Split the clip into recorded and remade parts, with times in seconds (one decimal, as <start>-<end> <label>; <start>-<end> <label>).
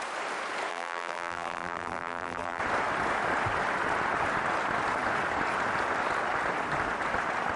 0.0-0.7 recorded; 0.7-2.6 remade; 2.6-7.6 recorded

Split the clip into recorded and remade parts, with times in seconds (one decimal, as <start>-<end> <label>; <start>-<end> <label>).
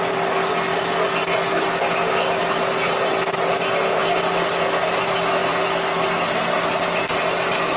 0.0-7.8 recorded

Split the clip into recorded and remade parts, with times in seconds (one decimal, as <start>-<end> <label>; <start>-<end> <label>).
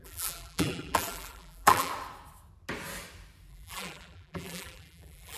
0.0-1.9 remade; 1.9-3.5 recorded; 3.5-5.4 remade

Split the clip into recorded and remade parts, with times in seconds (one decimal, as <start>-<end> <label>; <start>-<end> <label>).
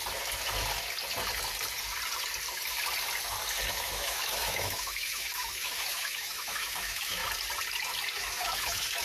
0.0-3.7 recorded; 3.7-7.2 remade; 7.2-8.2 recorded; 8.2-9.0 remade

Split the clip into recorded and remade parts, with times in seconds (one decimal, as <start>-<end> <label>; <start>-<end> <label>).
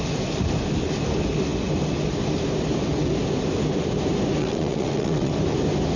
0.0-4.4 recorded; 4.4-5.3 remade; 5.3-6.0 recorded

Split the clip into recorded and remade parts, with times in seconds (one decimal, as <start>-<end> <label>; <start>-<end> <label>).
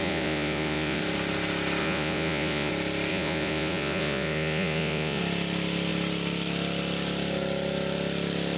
0.0-1.0 remade; 1.0-1.8 recorded; 1.8-2.7 remade; 2.7-3.1 recorded; 3.1-5.2 remade; 5.2-8.6 recorded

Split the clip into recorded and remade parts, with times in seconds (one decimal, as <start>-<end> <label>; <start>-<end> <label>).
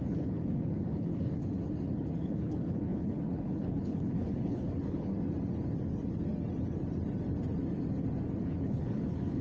0.0-1.4 remade; 1.4-2.2 recorded; 2.2-5.1 remade; 5.1-8.4 recorded; 8.4-9.4 remade